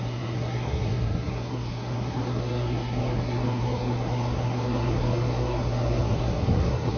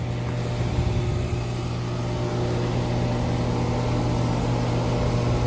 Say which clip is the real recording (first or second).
second